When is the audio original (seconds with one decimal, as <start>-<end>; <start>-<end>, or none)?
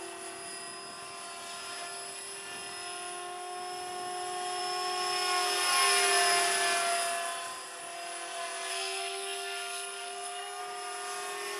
0.0-8.7; 10.6-11.6